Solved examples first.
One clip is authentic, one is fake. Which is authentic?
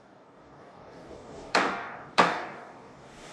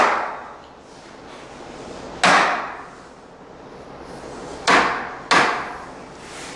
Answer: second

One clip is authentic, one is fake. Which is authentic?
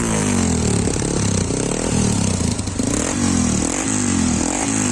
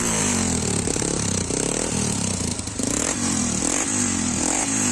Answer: first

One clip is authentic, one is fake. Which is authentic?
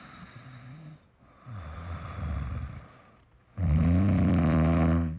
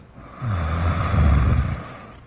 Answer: second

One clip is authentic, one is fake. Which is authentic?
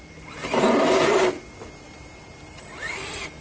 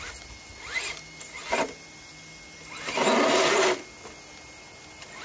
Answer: second